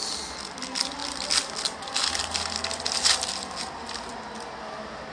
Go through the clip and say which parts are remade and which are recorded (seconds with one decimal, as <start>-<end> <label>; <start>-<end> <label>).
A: 0.0-1.0 recorded; 1.0-4.1 remade; 4.1-5.1 recorded

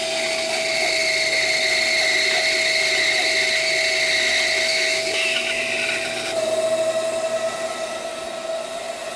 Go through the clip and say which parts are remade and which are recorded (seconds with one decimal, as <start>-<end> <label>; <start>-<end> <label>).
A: 0.0-4.7 recorded; 4.7-5.6 remade; 5.6-9.2 recorded

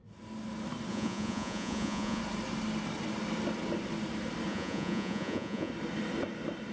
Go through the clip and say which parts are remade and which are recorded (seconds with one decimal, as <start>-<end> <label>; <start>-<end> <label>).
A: 0.0-0.9 recorded; 0.9-2.2 remade; 2.2-4.5 recorded; 4.5-5.7 remade; 5.7-6.7 recorded

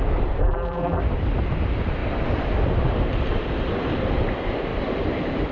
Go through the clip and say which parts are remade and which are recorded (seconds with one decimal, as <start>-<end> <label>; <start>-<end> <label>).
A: 0.0-0.4 recorded; 0.4-1.0 remade; 1.0-5.5 recorded